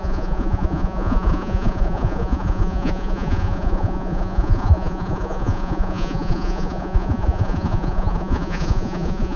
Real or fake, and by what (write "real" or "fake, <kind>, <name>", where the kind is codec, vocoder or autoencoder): fake, vocoder, Vocos